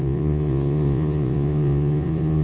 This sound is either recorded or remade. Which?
remade